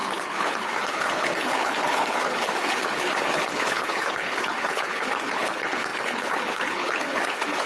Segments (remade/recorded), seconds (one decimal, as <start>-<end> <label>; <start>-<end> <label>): 0.0-7.7 remade